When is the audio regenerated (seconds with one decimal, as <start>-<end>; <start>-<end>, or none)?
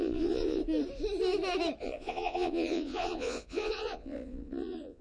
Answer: 0.0-0.6; 1.8-5.0